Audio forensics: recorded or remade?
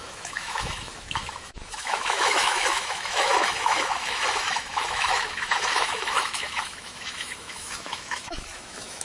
remade